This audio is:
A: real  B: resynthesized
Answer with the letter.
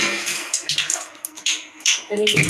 B